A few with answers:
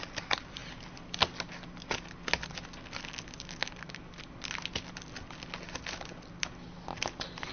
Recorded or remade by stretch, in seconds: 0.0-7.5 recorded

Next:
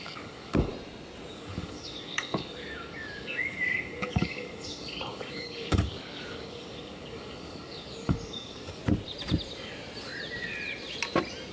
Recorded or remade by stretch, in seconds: 0.0-0.7 remade; 0.7-1.3 recorded; 1.3-8.8 remade; 8.8-11.5 recorded